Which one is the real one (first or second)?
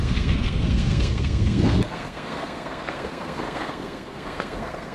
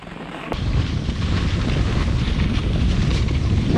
second